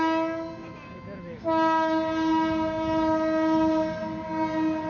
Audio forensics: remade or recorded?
recorded